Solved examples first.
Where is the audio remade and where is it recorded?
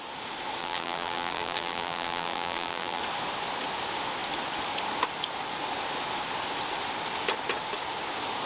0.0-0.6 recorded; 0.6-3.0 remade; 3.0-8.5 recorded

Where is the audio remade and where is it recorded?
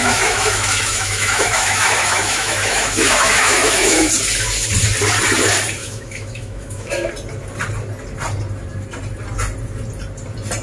0.0-4.1 remade; 4.1-5.8 recorded; 5.8-7.1 remade; 7.1-10.6 recorded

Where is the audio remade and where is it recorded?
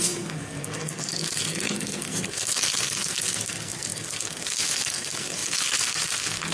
0.0-6.5 remade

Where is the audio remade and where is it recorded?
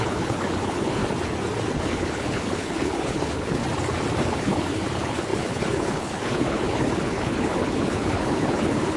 0.0-1.0 remade; 1.0-1.8 recorded; 1.8-3.6 remade; 3.6-4.2 recorded; 4.2-9.0 remade